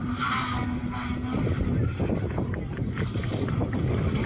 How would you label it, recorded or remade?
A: recorded